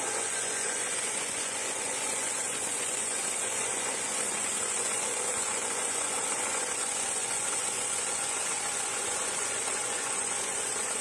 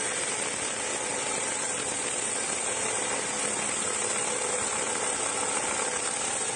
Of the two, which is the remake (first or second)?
first